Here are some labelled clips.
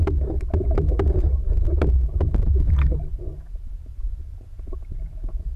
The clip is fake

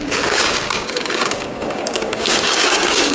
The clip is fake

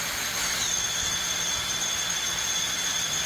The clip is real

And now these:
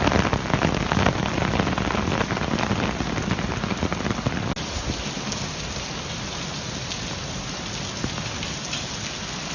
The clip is real